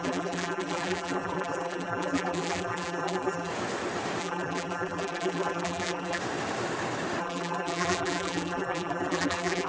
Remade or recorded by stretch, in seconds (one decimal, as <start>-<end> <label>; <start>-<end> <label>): 0.0-3.5 remade; 3.5-4.2 recorded; 4.2-6.2 remade; 6.2-7.2 recorded; 7.2-9.7 remade